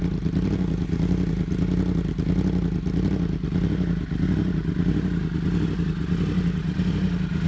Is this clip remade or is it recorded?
recorded